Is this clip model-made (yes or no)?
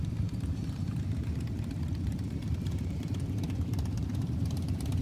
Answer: yes